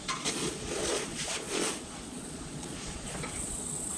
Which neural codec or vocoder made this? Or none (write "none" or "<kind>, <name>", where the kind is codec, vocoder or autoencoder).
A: vocoder, Vocos